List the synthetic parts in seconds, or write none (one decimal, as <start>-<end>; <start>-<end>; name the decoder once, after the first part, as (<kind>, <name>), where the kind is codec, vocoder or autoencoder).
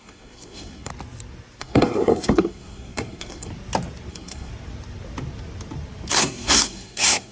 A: 0.0-0.9 (codec, SNAC); 1.6-3.5; 4.1-4.5; 6.1-7.3